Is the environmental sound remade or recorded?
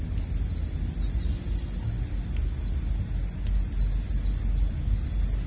recorded